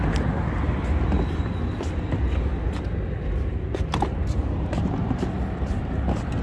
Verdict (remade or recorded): recorded